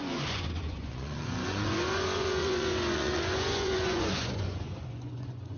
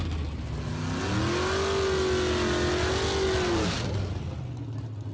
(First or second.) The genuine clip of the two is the second